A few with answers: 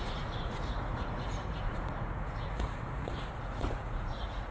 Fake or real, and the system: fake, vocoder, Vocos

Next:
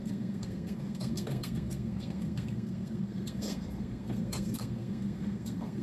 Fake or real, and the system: fake, codec, SNAC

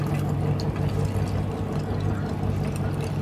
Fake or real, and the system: real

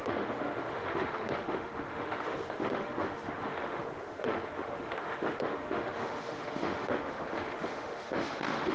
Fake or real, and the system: fake, autoencoder, DAC-VAE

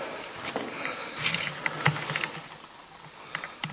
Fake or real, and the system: real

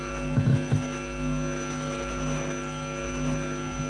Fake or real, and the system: real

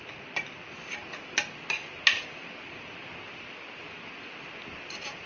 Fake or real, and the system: real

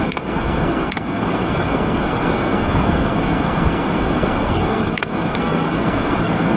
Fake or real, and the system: fake, codec, SNAC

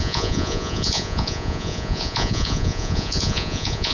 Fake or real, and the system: fake, vocoder, Vocos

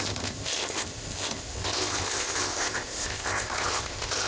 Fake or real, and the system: fake, codec, ZipCodec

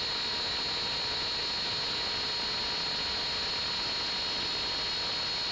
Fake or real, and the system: real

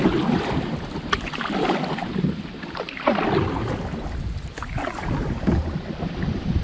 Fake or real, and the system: real